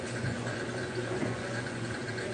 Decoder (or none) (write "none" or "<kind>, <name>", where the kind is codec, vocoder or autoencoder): vocoder, Vocos